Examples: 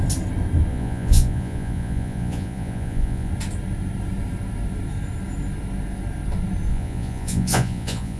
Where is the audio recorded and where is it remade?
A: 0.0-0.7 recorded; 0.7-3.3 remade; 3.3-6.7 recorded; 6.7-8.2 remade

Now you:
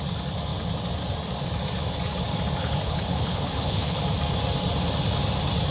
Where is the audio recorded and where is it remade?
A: 0.0-2.6 recorded; 2.6-4.0 remade; 4.0-5.7 recorded

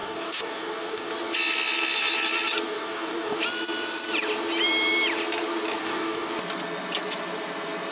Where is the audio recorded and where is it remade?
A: 0.0-1.1 remade; 1.1-2.7 recorded; 2.7-3.4 remade; 3.4-5.8 recorded; 5.8-6.3 remade; 6.3-7.9 recorded